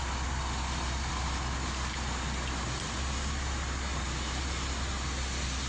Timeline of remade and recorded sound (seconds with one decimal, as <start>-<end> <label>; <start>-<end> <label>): 0.0-5.7 recorded

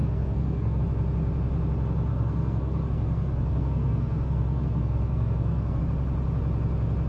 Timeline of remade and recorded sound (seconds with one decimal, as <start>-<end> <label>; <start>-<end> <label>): 0.0-0.8 remade; 0.8-2.1 recorded; 2.1-5.8 remade; 5.8-7.1 recorded

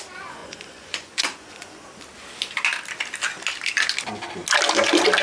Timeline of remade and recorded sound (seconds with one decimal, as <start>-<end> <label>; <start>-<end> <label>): 0.0-0.4 recorded; 0.4-1.9 remade; 1.9-5.2 recorded

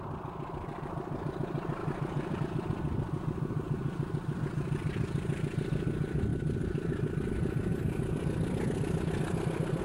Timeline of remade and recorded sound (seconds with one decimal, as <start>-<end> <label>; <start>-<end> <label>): 0.0-1.8 recorded; 1.8-2.4 remade; 2.4-9.8 recorded

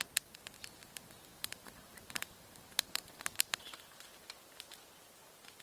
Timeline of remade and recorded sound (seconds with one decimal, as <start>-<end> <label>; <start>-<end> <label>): 0.0-1.3 recorded; 1.3-4.0 remade; 4.0-5.6 recorded